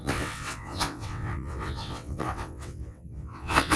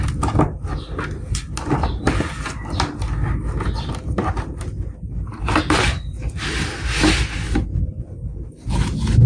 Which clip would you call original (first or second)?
second